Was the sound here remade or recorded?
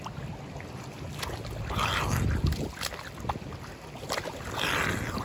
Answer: recorded